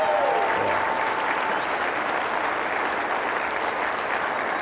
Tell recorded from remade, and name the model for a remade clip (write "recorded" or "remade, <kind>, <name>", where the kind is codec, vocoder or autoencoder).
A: recorded